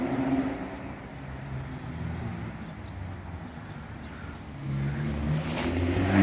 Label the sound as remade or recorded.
recorded